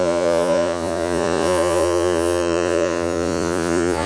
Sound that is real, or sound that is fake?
fake